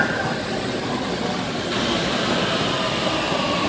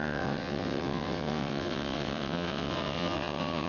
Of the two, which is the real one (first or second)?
first